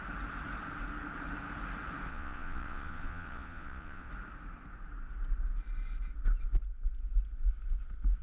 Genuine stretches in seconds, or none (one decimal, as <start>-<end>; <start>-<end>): 0.0-2.1; 4.1-8.2